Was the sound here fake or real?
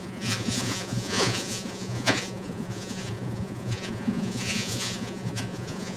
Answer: fake